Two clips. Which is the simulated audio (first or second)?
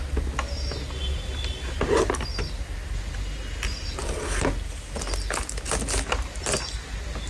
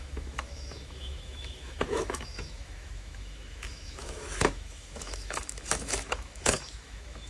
second